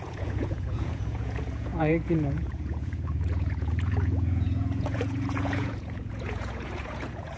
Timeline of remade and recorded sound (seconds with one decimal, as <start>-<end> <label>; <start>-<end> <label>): 0.0-7.4 remade